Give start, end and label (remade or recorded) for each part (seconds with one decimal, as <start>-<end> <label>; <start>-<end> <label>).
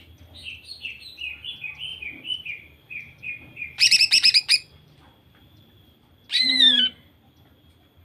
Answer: 0.0-1.9 recorded; 1.9-4.0 remade; 4.0-4.5 recorded; 4.5-6.1 remade; 6.1-8.0 recorded